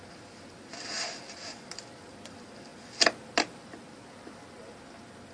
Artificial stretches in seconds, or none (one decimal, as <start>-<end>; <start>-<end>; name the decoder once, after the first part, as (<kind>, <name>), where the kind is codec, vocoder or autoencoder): none